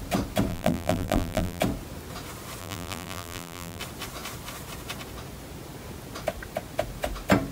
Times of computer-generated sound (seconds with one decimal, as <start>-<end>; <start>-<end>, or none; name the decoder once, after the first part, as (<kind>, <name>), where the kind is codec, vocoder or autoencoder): 0.5-1.6 (vocoder, BigVGAN v2); 2.6-3.8